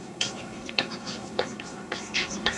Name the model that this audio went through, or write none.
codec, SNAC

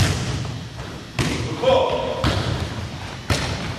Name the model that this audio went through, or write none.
vocoder, BigVGAN v2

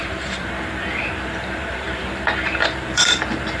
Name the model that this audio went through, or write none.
vocoder, BigVGAN v2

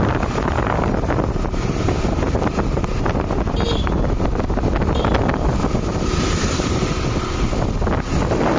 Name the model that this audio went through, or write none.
none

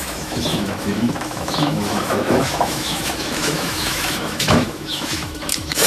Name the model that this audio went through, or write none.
autoencoder, DAC-VAE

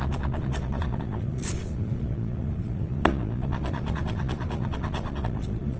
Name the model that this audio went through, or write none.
vocoder, Vocos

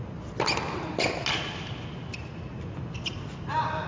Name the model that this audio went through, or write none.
none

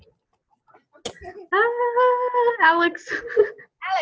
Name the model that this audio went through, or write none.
none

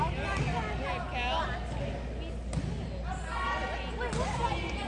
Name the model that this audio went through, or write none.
none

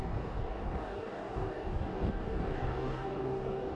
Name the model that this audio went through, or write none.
codec, DAC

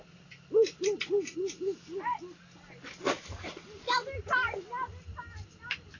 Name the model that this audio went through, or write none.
none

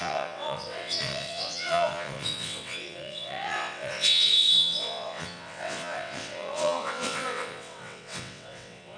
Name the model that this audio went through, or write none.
vocoder, WaveNeXt